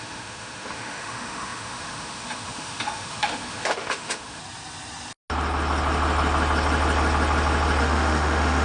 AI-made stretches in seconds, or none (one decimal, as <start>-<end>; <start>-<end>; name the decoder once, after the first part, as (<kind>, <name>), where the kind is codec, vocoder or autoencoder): 0.0-4.4 (autoencoder, DAC-VAE); 7.8-8.6